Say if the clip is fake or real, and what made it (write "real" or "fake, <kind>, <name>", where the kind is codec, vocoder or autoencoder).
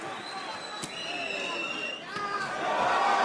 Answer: real